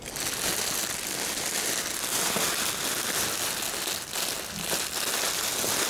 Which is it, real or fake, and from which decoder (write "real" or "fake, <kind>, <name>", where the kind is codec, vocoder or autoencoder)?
real